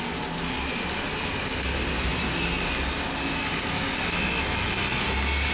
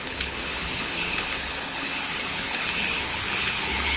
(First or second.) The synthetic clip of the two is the second